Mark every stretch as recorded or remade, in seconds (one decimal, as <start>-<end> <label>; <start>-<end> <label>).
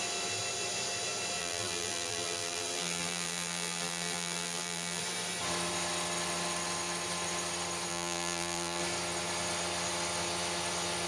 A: 0.0-1.4 recorded; 1.4-5.0 remade; 5.0-7.9 recorded; 7.9-8.8 remade; 8.8-11.1 recorded